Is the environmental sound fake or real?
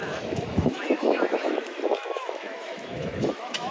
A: fake